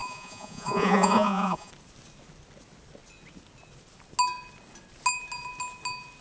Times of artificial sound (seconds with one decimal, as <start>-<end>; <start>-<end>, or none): 0.0-1.7